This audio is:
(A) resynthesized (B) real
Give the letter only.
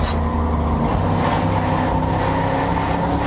B